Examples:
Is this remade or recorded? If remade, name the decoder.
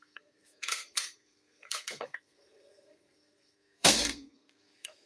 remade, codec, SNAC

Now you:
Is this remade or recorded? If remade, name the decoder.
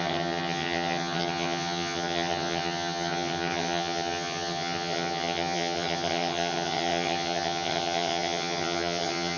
remade, vocoder, HiFi-GAN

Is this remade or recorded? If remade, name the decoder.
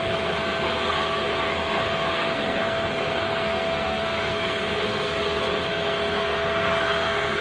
remade, codec, SNAC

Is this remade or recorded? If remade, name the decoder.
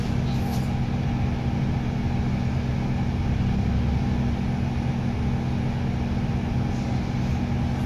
recorded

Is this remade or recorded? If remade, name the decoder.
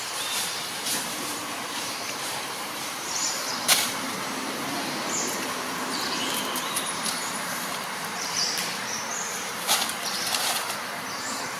remade, vocoder, BigVGAN v2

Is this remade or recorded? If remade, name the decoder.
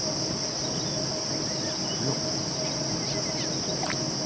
recorded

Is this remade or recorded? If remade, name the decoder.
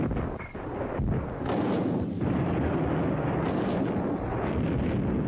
recorded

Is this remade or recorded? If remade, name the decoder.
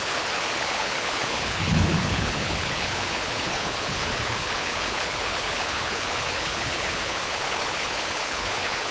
remade, codec, HILCodec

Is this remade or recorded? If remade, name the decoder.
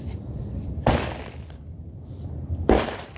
remade, vocoder, BigVGAN v2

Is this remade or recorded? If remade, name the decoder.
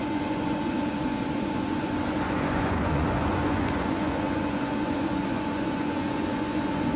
remade, vocoder, Vocos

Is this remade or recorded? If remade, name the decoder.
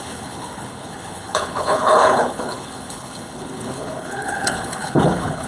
remade, codec, HILCodec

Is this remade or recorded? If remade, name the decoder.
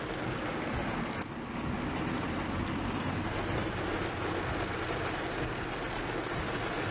recorded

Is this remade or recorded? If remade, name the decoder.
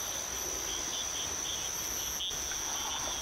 recorded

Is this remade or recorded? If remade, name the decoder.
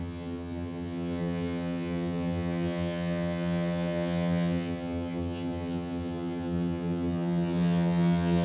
remade, vocoder, HiFi-GAN